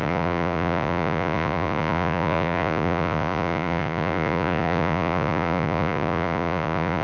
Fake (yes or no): yes